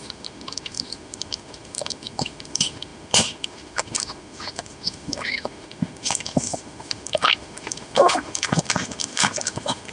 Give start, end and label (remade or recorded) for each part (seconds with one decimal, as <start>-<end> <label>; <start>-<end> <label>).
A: 0.0-9.9 remade